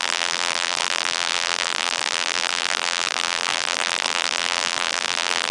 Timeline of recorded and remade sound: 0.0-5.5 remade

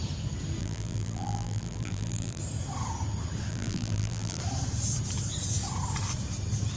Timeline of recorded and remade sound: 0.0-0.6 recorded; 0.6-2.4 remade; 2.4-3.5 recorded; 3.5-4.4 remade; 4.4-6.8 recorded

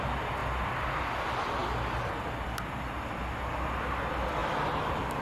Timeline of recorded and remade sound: 0.0-4.4 recorded; 4.4-5.2 remade

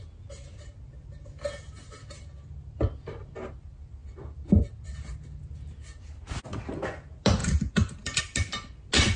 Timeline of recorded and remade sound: 0.0-7.4 recorded; 7.4-8.2 remade; 8.2-9.2 recorded